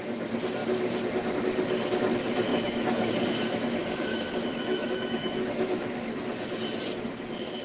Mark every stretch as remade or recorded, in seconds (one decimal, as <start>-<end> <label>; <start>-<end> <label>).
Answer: 0.0-2.5 recorded; 2.5-3.1 remade; 3.1-3.8 recorded; 3.8-6.1 remade; 6.1-7.6 recorded